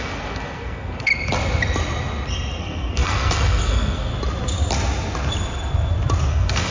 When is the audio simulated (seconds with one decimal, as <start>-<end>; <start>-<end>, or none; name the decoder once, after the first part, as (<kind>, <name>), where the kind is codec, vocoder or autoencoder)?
0.0-1.1 (codec, SNAC); 2.6-4.1; 6.3-6.7